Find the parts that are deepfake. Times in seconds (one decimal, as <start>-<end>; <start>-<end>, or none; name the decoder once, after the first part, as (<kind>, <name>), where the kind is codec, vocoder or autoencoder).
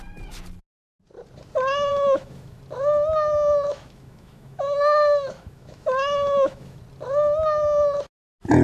1.9-2.6 (autoencoder, DAC-VAE); 3.7-6.8